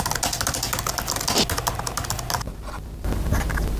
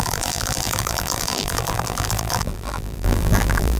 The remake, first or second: second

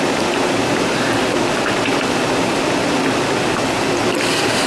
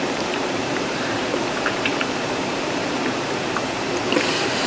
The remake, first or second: second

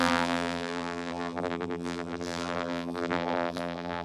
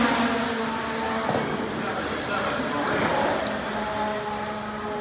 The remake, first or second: first